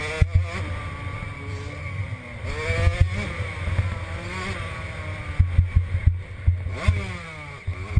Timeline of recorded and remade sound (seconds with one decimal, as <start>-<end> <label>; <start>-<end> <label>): 0.0-8.0 recorded